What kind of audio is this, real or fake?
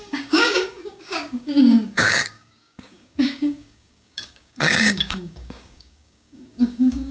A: fake